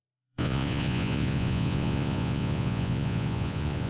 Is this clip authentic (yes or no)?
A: no